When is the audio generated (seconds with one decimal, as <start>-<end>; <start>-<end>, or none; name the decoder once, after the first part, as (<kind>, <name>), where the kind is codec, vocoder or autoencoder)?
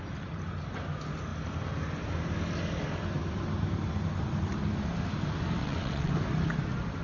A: 5.6-6.1 (vocoder, WaveNeXt)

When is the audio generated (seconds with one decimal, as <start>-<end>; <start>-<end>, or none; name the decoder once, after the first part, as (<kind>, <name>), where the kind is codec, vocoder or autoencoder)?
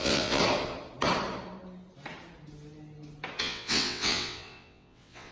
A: 0.0-0.4 (vocoder, WaveNeXt); 3.4-5.3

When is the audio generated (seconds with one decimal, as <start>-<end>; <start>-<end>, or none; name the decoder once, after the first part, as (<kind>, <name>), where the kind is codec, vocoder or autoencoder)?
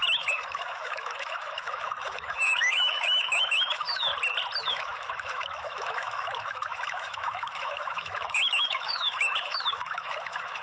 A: 0.0-4.1 (autoencoder, DAC-VAE); 4.6-10.6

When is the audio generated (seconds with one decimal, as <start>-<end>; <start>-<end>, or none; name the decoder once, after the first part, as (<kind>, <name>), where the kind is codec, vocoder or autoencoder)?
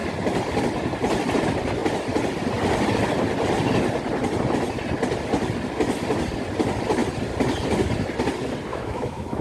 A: 8.7-9.4 (autoencoder, DAC-VAE)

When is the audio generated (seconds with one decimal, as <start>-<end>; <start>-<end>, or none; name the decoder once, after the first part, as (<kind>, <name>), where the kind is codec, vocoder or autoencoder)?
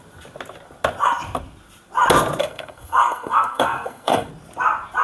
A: 2.4-4.3 (codec, SNAC)